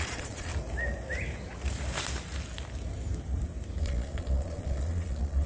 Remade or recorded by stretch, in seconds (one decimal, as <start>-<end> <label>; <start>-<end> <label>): 0.0-0.5 remade; 0.5-3.8 recorded; 3.8-5.5 remade